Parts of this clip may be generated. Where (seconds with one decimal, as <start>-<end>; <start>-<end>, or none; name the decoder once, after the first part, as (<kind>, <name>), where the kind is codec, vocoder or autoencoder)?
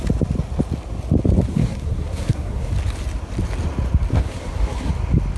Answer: 1.5-2.7 (codec, SNAC); 4.1-4.9